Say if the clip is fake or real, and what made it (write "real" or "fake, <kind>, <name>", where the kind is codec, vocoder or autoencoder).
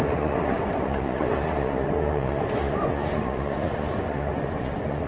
fake, vocoder, Vocos